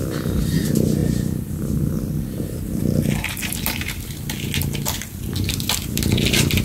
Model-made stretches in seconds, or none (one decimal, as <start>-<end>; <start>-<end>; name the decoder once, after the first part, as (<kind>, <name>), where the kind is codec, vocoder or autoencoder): none